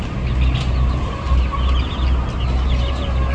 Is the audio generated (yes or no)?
no